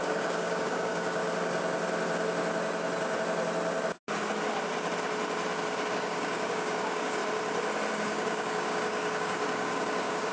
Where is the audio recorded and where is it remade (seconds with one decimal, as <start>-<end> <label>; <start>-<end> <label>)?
0.0-1.2 remade; 1.2-5.9 recorded; 5.9-7.2 remade; 7.2-7.9 recorded; 7.9-10.3 remade